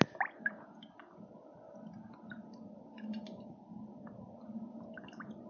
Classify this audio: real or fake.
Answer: real